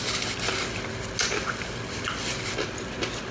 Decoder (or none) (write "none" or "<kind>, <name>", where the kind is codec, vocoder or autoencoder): none